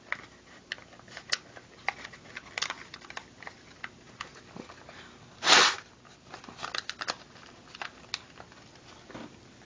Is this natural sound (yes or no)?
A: yes